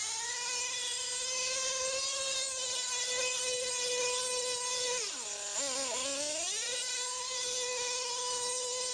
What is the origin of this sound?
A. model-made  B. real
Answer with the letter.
B